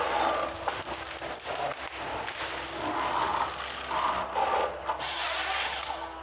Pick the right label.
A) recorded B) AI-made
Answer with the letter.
A